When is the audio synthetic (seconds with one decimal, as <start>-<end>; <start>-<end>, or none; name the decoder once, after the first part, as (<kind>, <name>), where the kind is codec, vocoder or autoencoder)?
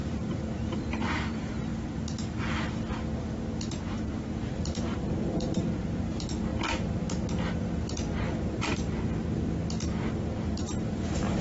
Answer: 0.0-1.7 (vocoder, BigVGAN v2); 3.8-6.5; 10.4-11.4